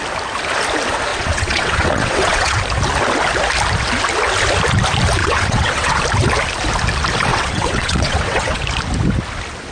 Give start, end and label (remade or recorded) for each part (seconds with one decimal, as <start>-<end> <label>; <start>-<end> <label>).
0.0-1.1 recorded; 1.1-2.6 remade; 2.6-5.2 recorded; 5.2-6.0 remade; 6.0-7.3 recorded; 7.3-8.6 remade; 8.6-9.7 recorded